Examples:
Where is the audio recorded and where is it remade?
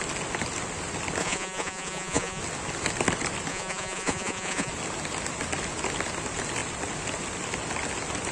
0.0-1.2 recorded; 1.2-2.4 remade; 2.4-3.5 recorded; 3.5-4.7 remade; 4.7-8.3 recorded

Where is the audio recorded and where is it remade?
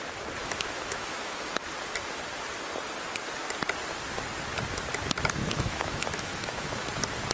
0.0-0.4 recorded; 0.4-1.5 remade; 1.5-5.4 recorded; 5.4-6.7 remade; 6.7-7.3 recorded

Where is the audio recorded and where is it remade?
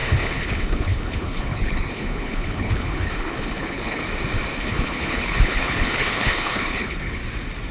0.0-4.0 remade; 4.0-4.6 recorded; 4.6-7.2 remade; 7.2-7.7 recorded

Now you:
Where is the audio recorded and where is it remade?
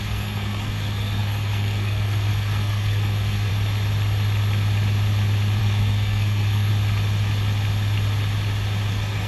0.0-3.5 remade; 3.5-5.6 recorded; 5.6-6.7 remade; 6.7-8.9 recorded; 8.9-9.3 remade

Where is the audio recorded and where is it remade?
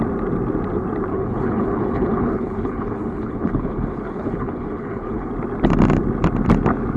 0.0-1.1 recorded; 1.1-5.3 remade; 5.3-7.0 recorded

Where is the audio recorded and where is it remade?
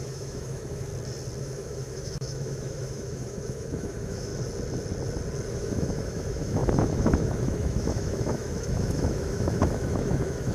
0.0-0.9 remade; 0.9-1.4 recorded; 1.4-4.3 remade; 4.3-5.5 recorded; 5.5-10.5 remade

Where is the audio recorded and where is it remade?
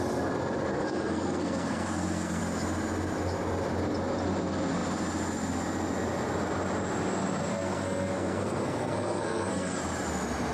0.0-0.7 recorded; 0.7-2.4 remade; 2.4-7.5 recorded; 7.5-9.8 remade; 9.8-10.5 recorded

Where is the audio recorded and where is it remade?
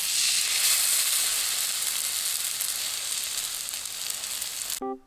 0.0-5.1 recorded